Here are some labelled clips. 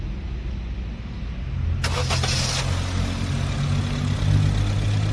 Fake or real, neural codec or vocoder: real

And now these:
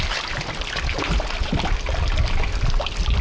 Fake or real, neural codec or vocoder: real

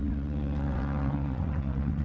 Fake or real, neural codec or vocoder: fake, vocoder, WaveNeXt